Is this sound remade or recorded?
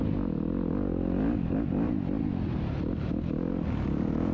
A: recorded